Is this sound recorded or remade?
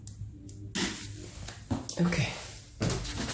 recorded